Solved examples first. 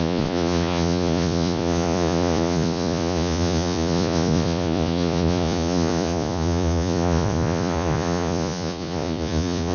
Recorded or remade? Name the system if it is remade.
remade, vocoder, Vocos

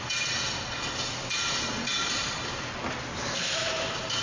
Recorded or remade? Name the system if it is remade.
recorded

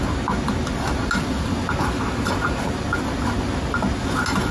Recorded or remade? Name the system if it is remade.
recorded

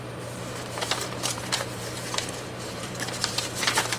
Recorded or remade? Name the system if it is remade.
remade, vocoder, BigVGAN v2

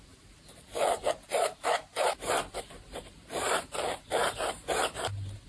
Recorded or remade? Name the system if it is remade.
remade, vocoder, BigVGAN v2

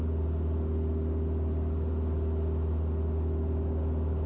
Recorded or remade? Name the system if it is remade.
recorded